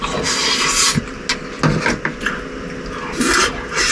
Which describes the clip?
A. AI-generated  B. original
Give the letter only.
B